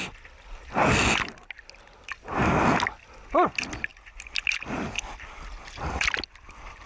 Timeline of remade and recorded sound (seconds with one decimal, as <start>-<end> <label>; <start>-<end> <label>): 0.0-6.9 recorded